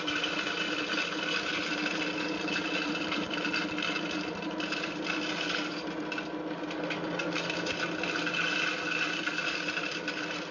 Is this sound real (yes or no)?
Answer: yes